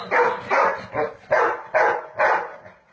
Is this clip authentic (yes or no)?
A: yes